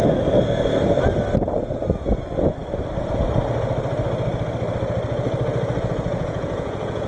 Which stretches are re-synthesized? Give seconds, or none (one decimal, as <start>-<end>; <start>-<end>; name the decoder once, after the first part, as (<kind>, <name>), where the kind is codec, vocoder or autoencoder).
6.1-7.1 (vocoder, Vocos)